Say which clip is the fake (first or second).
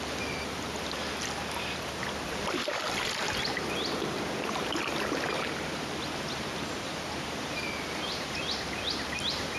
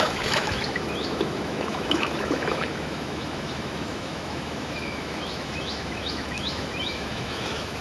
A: second